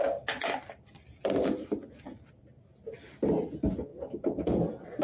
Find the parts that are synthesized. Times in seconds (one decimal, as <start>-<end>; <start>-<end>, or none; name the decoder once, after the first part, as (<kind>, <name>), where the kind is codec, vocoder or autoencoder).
none